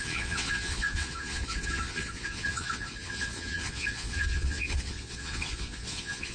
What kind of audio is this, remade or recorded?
remade